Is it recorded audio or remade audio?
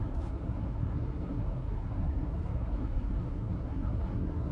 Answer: remade